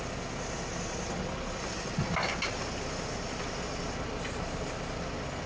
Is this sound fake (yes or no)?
no